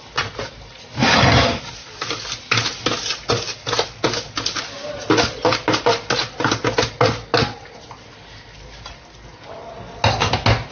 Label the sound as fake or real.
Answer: real